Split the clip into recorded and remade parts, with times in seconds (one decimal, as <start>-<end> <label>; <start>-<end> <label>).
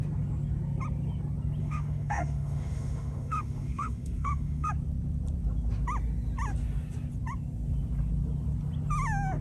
0.0-1.6 recorded; 1.6-4.7 remade; 4.7-9.4 recorded